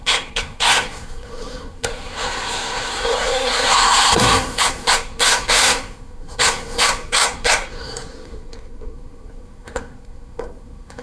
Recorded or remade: remade